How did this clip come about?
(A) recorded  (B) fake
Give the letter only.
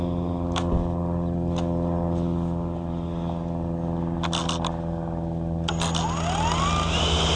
A